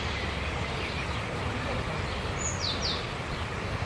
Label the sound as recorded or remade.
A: recorded